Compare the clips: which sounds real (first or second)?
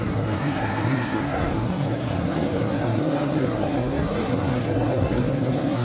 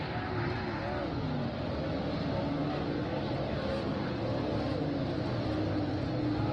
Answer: second